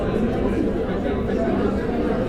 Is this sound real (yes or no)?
yes